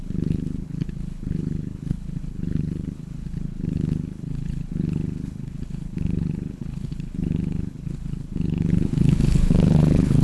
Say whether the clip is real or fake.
fake